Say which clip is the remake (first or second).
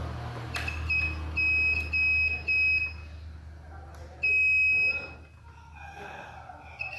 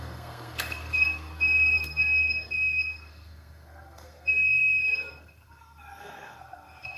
second